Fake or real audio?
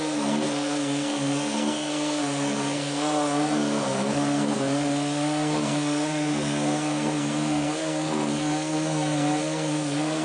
fake